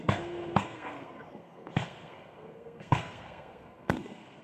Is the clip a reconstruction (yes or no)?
yes